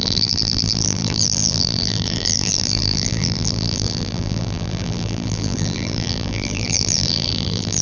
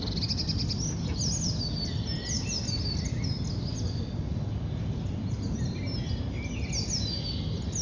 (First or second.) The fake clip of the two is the first